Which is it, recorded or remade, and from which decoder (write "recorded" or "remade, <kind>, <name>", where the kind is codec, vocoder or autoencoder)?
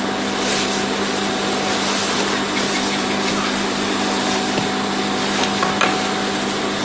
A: recorded